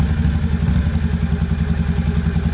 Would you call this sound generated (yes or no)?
no